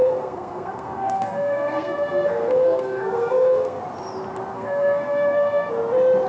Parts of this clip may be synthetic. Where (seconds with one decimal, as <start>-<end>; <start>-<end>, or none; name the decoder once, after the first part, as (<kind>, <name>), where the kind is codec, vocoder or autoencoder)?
0.0-3.8 (codec, SNAC); 4.5-5.7